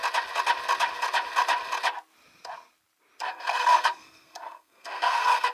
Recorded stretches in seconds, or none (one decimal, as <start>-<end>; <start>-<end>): 0.0-3.3